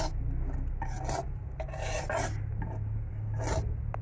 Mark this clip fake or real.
real